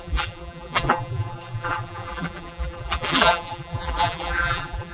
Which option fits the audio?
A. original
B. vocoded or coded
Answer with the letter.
B